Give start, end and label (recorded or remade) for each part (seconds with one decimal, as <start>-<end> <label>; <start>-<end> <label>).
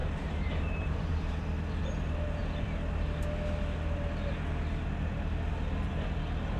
0.0-1.1 remade; 1.1-6.6 recorded